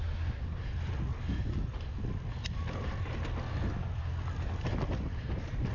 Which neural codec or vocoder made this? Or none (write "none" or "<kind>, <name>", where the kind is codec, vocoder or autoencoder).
none